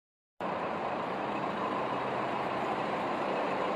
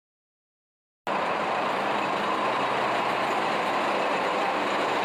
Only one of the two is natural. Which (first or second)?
second